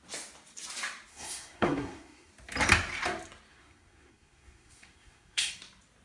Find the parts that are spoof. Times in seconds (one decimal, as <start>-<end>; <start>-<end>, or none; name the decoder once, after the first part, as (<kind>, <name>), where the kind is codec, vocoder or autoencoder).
1.1-2.3 (codec, SNAC); 3.5-5.5